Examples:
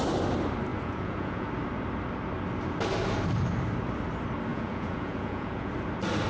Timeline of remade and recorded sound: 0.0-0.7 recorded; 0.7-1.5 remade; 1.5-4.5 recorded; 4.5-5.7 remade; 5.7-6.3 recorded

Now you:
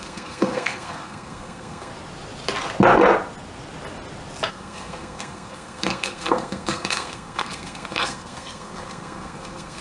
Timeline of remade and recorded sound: 0.0-1.9 remade; 1.9-4.5 recorded; 4.5-9.8 remade

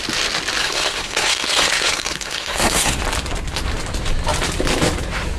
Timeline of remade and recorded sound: 0.0-0.6 recorded; 0.6-3.0 remade; 3.0-5.4 recorded

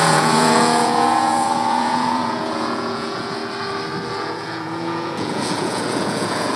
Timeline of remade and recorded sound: 0.0-3.4 remade; 3.4-4.1 recorded; 4.1-6.6 remade

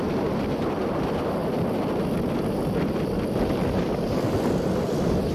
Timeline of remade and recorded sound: 0.0-1.4 remade; 1.4-4.5 recorded; 4.5-5.3 remade

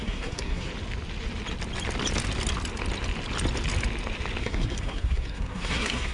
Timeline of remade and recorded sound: 0.0-0.7 remade; 0.7-4.4 recorded; 4.4-6.1 remade